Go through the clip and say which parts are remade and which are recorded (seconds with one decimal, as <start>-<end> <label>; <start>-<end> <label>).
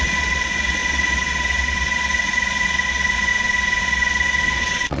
0.0-3.3 remade; 3.3-3.8 recorded; 3.8-5.0 remade